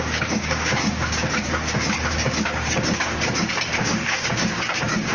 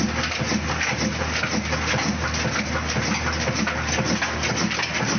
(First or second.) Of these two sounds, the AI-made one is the first